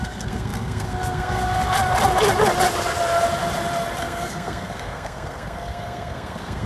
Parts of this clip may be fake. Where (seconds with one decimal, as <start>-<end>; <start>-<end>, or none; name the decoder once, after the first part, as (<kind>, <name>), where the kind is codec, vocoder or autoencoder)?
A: 0.0-1.6 (codec, SNAC); 4.0-6.7